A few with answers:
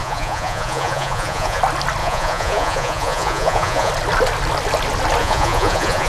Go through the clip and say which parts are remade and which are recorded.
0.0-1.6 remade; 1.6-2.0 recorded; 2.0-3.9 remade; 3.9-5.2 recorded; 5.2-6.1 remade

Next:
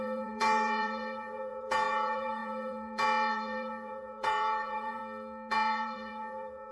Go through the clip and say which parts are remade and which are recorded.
0.0-5.0 remade; 5.0-5.5 recorded; 5.5-6.7 remade

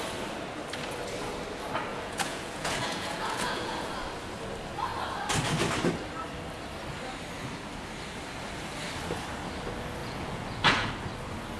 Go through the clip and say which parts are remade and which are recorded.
0.0-1.9 recorded; 1.9-3.9 remade; 3.9-10.0 recorded; 10.0-10.9 remade; 10.9-11.6 recorded

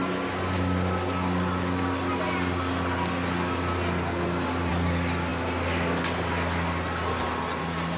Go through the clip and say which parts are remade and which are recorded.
0.0-8.0 recorded

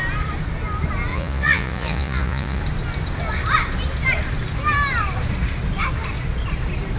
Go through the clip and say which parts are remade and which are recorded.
0.0-1.1 recorded; 1.1-2.6 remade; 2.6-7.0 recorded

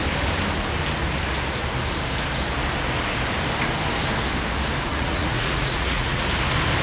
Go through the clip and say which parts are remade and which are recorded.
0.0-4.9 recorded; 4.9-6.2 remade; 6.2-6.8 recorded

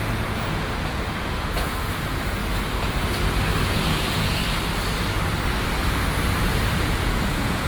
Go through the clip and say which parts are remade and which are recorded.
0.0-2.4 remade; 2.4-3.6 recorded; 3.6-4.4 remade; 4.4-6.4 recorded; 6.4-7.7 remade